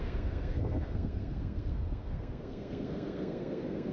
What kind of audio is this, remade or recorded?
remade